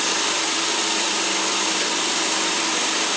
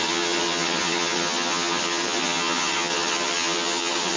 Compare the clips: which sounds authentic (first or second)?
first